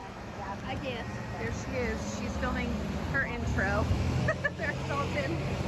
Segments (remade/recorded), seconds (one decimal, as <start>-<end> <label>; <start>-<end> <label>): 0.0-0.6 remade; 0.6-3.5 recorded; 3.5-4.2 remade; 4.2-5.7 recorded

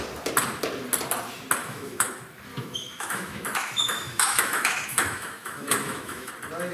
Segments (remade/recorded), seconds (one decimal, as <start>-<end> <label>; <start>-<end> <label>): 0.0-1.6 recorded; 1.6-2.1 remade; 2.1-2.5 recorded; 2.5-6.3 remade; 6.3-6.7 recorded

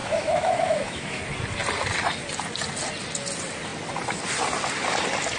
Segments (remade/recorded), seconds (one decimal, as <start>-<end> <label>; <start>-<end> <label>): 0.0-1.2 remade; 1.2-5.4 recorded

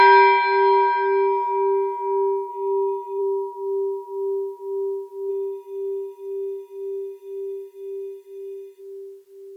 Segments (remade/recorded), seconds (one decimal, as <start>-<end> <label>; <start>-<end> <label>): 0.0-2.5 recorded; 2.5-3.2 remade; 3.2-5.3 recorded; 5.3-8.8 remade; 8.8-9.6 recorded

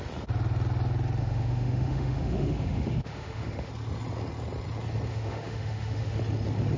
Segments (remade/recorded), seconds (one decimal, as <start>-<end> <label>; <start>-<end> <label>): 0.0-1.2 recorded; 1.2-3.7 remade; 3.7-5.1 recorded; 5.1-6.2 remade; 6.2-6.8 recorded

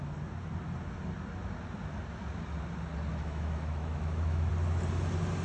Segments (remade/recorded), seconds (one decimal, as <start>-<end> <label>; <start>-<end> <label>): 0.0-3.1 recorded; 3.1-4.5 remade; 4.5-5.4 recorded

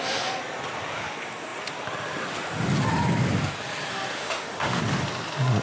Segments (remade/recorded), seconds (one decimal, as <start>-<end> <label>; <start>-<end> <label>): 0.0-4.1 recorded; 4.1-4.8 remade; 4.8-5.6 recorded